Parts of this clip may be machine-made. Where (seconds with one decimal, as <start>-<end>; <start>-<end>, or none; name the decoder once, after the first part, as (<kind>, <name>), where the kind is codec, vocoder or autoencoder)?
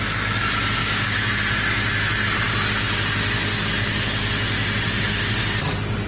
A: 0.8-1.3 (codec, DAC)